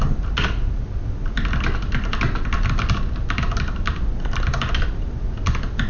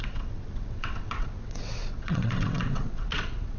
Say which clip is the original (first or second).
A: first